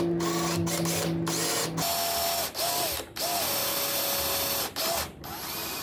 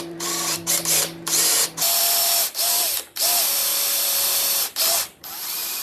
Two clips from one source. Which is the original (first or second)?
first